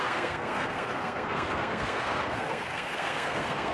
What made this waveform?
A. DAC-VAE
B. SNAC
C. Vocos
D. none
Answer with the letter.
B